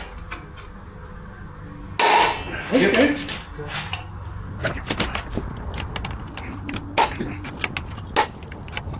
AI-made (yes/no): no